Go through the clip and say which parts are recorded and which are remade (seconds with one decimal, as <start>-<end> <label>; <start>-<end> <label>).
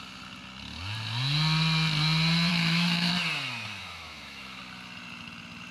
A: 0.0-2.5 recorded; 2.5-3.1 remade; 3.1-3.8 recorded; 3.8-4.6 remade; 4.6-5.7 recorded